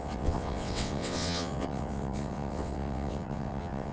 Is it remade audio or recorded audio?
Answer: remade